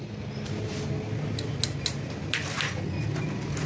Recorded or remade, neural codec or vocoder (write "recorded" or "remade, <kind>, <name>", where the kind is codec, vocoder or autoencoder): recorded